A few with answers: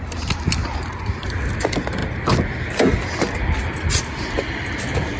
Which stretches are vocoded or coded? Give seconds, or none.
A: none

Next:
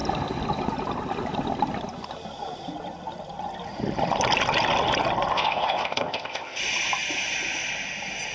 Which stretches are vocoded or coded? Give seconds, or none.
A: 5.3-6.6 (codec, ZipCodec)